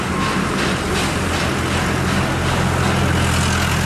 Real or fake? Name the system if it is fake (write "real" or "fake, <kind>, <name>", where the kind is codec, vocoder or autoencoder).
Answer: real